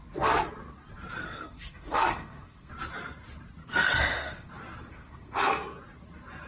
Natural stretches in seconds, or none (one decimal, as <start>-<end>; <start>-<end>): 0.0-1.2; 2.7-3.6; 4.5-4.9; 5.6-6.5